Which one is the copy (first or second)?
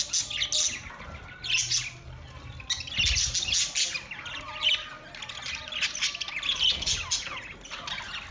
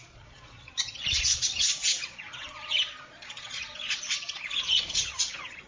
second